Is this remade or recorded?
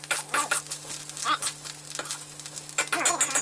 recorded